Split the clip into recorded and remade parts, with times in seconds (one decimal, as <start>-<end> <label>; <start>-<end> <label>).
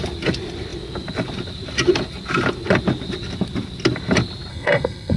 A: 0.0-4.5 recorded; 4.5-5.2 remade